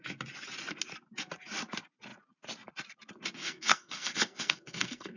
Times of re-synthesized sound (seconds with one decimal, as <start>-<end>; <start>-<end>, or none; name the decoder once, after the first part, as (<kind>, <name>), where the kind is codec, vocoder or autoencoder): 3.4-5.2 (codec, SNAC)